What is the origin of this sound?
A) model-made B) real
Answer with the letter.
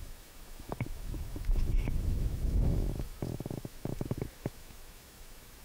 A